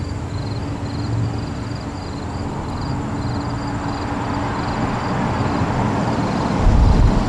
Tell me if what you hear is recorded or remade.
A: recorded